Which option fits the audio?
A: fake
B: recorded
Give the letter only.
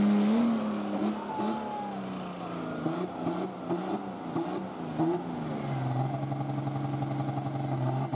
B